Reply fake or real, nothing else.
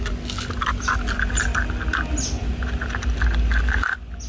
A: real